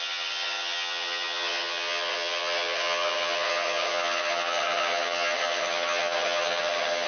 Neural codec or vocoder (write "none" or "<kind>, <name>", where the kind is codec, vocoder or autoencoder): vocoder, HiFi-GAN